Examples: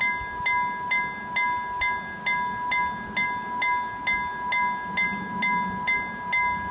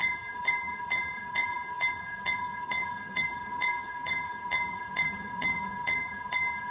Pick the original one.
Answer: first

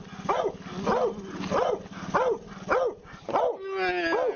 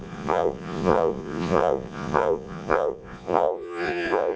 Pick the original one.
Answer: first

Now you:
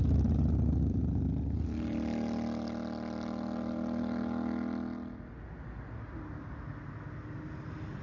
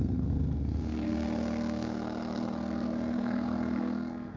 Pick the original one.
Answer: first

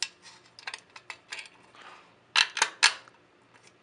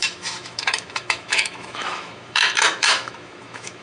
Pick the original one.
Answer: first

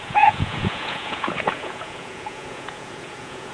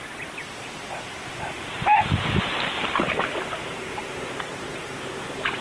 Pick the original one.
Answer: second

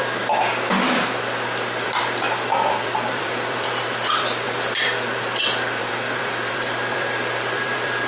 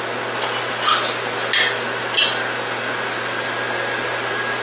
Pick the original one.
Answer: second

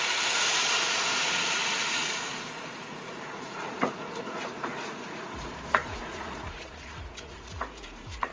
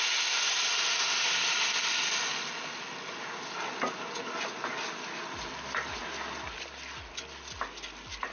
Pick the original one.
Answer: second